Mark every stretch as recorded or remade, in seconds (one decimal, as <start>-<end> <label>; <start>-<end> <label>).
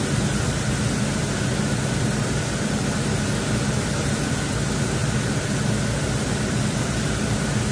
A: 0.0-5.0 recorded; 5.0-5.5 remade; 5.5-7.7 recorded